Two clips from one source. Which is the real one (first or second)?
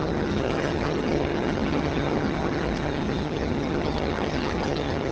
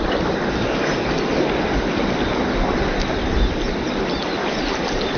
second